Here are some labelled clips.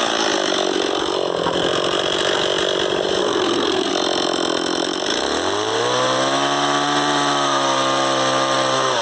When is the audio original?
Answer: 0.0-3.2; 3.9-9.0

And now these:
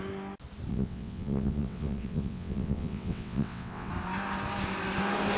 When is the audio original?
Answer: 0.0-0.7; 3.9-5.4

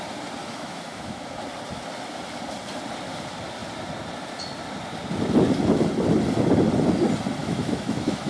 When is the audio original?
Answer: 0.0-0.4; 1.4-7.4

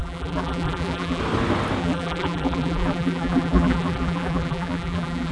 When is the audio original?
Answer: 1.2-1.8

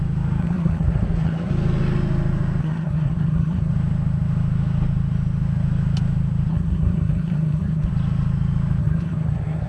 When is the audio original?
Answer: 0.0-0.4; 1.5-2.6; 3.7-6.5; 7.9-8.8

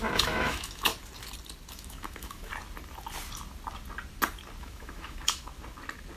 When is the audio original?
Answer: 0.9-1.7; 2.5-4.6; 5.5-6.2